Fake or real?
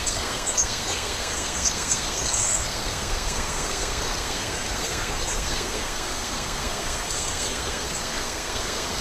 fake